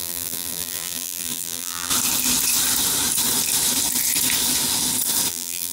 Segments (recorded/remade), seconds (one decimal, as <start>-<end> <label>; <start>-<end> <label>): 0.0-1.9 remade; 1.9-5.3 recorded; 5.3-5.7 remade